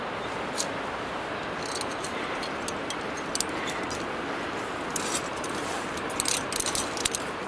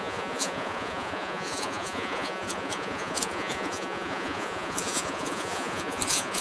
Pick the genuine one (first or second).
first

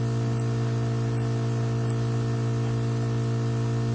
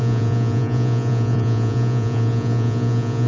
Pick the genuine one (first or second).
first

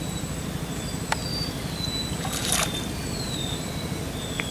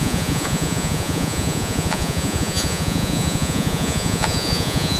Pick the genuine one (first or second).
first